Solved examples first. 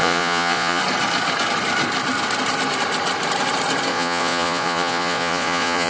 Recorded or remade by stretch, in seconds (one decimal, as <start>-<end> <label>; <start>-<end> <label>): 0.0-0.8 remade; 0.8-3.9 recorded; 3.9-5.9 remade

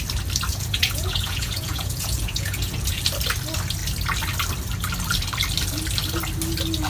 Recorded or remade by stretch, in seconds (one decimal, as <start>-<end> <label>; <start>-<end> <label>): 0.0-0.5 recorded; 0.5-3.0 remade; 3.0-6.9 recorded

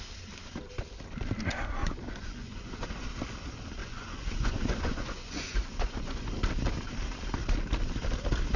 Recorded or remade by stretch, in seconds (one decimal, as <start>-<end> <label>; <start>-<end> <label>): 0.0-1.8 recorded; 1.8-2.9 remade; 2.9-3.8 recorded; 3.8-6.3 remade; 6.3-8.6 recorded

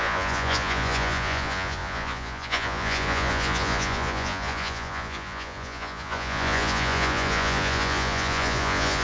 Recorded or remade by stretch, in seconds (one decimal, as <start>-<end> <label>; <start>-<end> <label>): 0.0-9.0 remade